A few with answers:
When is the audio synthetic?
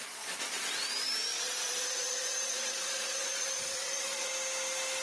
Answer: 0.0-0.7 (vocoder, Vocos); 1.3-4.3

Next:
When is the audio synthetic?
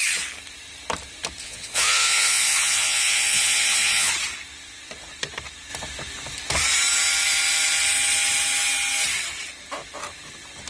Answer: 1.4-4.1 (vocoder, Vocos)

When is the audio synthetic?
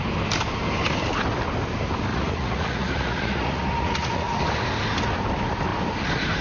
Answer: 2.1-4.4 (vocoder, Vocos)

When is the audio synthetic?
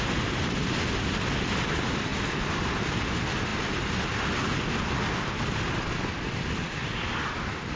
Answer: none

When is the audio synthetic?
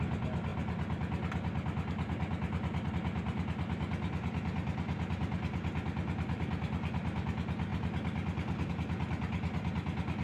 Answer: none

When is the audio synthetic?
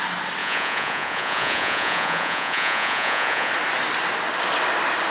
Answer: 0.4-3.5 (vocoder, Vocos)